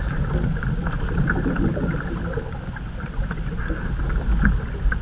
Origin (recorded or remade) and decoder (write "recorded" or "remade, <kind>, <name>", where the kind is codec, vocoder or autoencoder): recorded